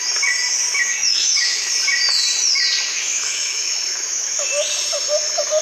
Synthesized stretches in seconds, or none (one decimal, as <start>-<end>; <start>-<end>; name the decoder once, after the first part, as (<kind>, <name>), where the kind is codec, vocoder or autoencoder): 1.0-1.7 (autoencoder, DAC-VAE); 2.9-4.4